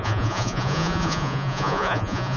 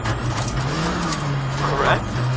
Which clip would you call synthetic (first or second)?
first